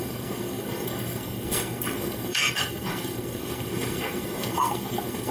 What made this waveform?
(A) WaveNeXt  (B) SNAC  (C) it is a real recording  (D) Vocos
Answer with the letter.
B